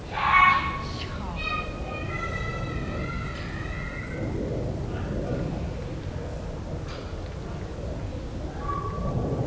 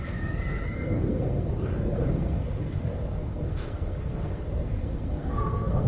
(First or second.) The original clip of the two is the first